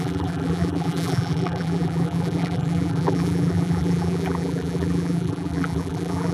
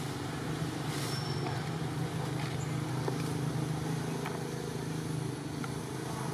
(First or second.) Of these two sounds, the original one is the second